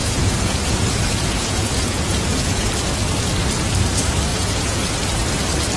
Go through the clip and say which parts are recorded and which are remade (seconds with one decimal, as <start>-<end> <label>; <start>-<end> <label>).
0.0-2.7 remade; 2.7-4.3 recorded; 4.3-4.9 remade; 4.9-5.8 recorded